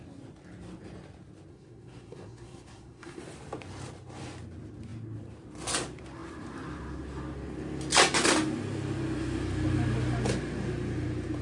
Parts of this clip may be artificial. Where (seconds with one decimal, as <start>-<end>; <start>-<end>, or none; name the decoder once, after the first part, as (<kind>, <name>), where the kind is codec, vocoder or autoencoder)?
1.5-3.2 (codec, SNAC)